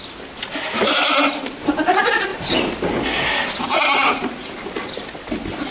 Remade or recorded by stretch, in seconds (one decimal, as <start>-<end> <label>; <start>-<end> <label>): 0.0-5.7 recorded